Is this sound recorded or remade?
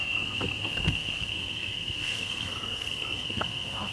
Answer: remade